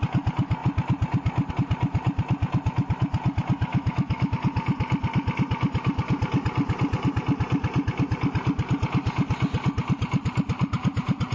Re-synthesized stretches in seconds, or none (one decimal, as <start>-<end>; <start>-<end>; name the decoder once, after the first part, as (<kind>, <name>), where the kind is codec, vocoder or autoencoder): 3.7-4.3 (autoencoder, DAC-VAE)